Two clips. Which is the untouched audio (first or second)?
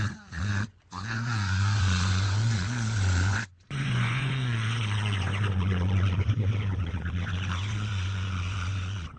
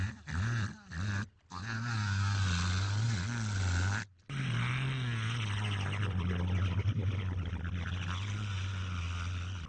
second